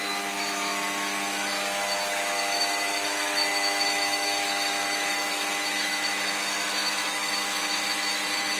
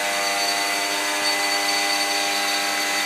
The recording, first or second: second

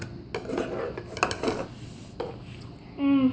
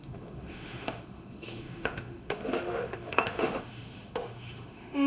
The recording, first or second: first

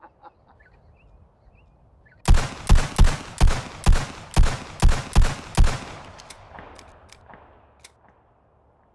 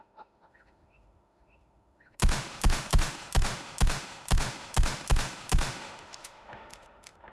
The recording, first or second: first